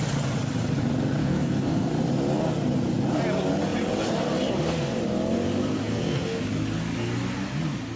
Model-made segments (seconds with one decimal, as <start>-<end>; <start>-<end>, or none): 1.2-1.9; 5.8-6.4